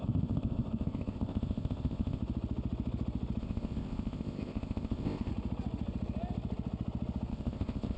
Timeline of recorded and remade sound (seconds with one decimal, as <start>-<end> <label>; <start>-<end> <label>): 0.0-2.2 remade; 2.2-3.4 recorded; 3.4-5.3 remade; 5.3-7.3 recorded; 7.3-8.0 remade